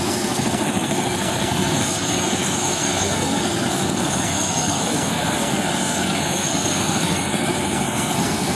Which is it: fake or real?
fake